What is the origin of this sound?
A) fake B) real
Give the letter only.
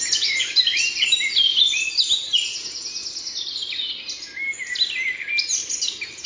B